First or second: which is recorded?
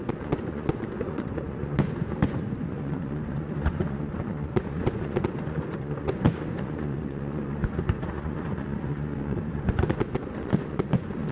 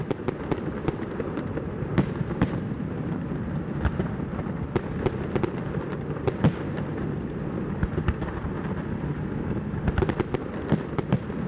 second